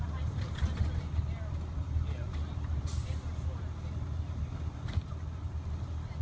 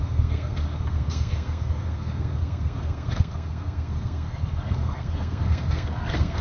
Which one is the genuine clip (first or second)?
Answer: first